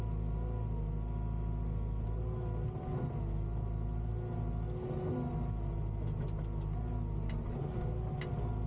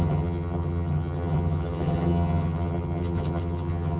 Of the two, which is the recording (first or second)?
first